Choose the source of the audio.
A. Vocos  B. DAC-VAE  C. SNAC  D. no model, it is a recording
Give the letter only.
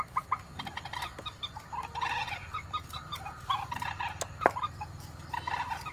D